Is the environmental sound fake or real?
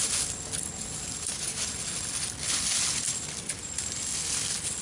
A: real